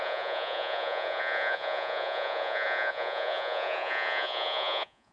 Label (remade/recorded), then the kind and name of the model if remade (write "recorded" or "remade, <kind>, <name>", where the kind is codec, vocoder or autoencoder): remade, vocoder, Vocos